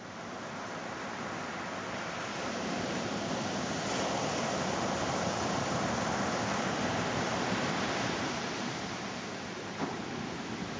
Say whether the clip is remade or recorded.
remade